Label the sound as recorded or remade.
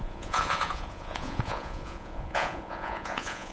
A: remade